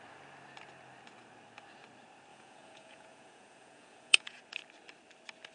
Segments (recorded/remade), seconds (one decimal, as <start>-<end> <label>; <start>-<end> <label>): 0.0-2.3 recorded; 2.3-4.4 remade; 4.4-5.5 recorded

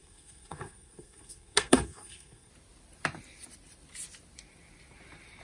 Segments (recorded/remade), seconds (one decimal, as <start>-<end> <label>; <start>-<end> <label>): 0.0-2.5 remade; 2.5-5.4 recorded

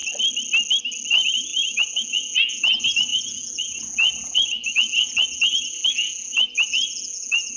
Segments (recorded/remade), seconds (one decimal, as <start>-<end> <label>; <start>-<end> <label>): 0.0-1.1 recorded; 1.1-7.6 remade

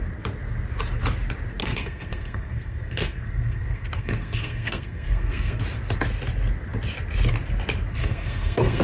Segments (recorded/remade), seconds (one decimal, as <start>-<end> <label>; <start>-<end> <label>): 0.0-1.6 recorded; 1.6-5.6 remade; 5.6-7.9 recorded; 7.9-8.8 remade

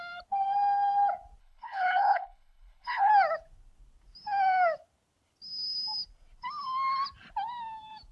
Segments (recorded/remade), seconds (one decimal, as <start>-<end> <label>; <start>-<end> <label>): 0.0-1.4 recorded; 1.4-3.1 remade; 3.1-8.1 recorded

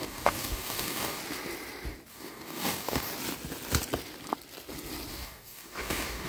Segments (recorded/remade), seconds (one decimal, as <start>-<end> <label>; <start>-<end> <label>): 0.0-1.2 remade; 1.2-2.1 recorded; 2.1-3.1 remade; 3.1-5.1 recorded; 5.1-6.3 remade

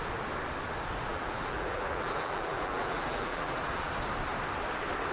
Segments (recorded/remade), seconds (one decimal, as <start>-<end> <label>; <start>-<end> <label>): 0.0-1.1 recorded; 1.1-3.9 remade; 3.9-5.1 recorded